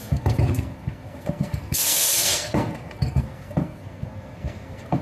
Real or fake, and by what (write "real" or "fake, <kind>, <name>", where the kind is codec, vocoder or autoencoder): fake, codec, SNAC